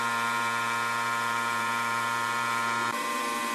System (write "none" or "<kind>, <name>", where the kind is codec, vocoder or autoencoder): vocoder, BigVGAN v2